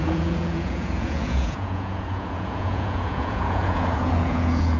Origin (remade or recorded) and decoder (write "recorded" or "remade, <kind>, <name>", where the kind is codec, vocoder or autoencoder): remade, vocoder, Vocos